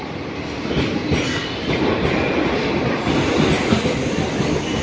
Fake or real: real